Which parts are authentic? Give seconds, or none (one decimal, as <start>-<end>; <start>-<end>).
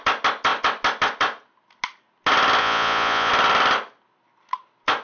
0.0-2.6; 3.3-5.0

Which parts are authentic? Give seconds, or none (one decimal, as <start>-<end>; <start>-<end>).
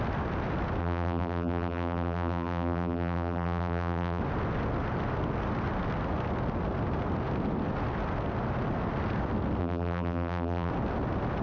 0.0-0.8; 4.2-9.6; 10.7-11.4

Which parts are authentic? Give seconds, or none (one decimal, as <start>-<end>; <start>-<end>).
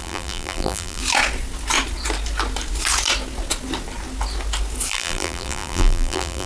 1.0-4.9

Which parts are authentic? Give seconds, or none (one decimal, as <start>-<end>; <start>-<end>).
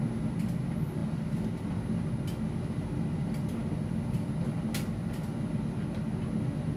0.0-6.8